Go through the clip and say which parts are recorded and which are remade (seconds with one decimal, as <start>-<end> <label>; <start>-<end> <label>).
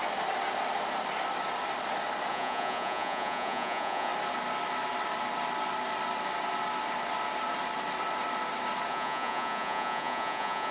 0.0-2.3 recorded; 2.3-4.1 remade; 4.1-8.9 recorded; 8.9-10.7 remade